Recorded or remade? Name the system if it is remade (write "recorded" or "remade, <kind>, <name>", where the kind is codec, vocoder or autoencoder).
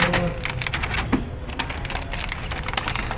recorded